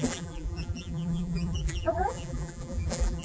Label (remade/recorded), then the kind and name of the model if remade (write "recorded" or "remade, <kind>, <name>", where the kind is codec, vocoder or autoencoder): remade, vocoder, BigVGAN v2